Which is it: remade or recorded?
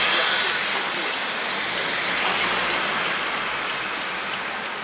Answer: recorded